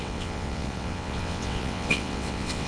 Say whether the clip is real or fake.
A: fake